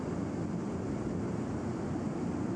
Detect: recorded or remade recorded